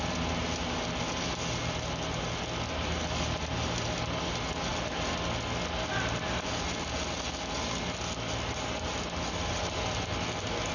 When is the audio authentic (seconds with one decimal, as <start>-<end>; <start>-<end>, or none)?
0.0-10.7